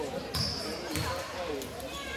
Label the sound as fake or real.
real